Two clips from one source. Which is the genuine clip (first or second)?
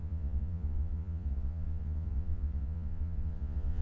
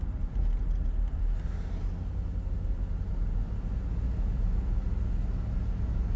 second